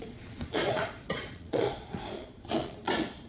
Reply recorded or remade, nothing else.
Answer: remade